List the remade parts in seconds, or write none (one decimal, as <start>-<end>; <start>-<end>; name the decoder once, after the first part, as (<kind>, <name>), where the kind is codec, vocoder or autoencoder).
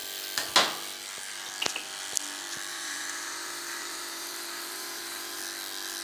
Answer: 2.7-5.4 (vocoder, BigVGAN v2)